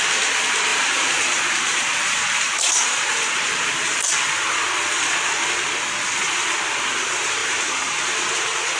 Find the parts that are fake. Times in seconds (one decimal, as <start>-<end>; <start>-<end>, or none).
0.7-4.1; 7.4-8.0